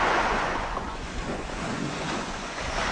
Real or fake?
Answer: fake